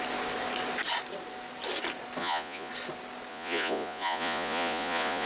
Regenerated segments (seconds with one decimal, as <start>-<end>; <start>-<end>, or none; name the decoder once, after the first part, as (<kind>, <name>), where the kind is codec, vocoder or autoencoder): 2.2-2.7 (vocoder, Vocos); 3.3-5.3